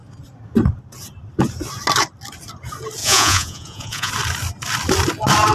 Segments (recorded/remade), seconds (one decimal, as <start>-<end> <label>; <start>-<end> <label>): 0.0-3.0 recorded; 3.0-4.1 remade; 4.1-5.5 recorded